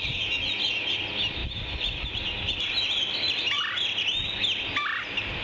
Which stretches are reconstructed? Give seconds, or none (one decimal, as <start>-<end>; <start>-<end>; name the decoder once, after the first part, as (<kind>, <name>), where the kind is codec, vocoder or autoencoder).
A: 1.4-2.4 (vocoder, BigVGAN v2)